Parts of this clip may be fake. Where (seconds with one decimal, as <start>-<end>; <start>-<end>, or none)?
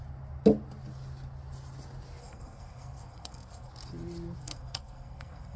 2.2-3.7; 4.4-5.6